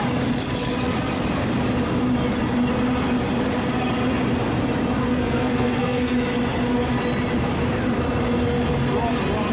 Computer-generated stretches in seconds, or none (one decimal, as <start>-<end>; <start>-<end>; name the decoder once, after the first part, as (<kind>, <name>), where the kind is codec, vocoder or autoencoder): 5.1-6.1 (codec, SNAC)